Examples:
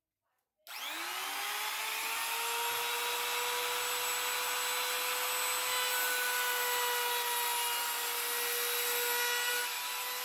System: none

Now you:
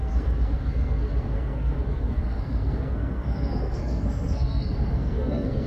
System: codec, SNAC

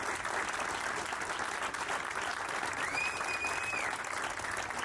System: none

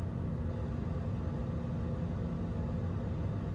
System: none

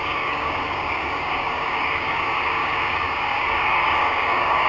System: codec, DAC